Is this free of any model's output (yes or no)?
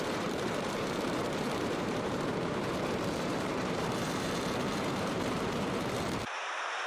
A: no